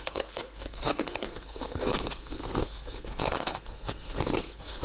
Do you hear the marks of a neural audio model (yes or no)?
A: yes